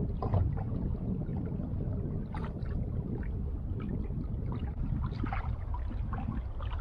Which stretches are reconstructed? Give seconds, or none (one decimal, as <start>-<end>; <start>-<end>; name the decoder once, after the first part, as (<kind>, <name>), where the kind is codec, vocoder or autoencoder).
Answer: 0.0-1.3 (vocoder, BigVGAN v2); 1.9-6.8